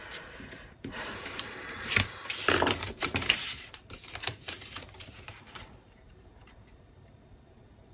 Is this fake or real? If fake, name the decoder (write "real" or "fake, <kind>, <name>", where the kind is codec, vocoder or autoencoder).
fake, vocoder, BigVGAN v2